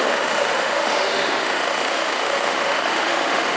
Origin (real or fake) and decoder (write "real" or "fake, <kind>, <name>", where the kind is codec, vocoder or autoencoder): fake, autoencoder, DAC-VAE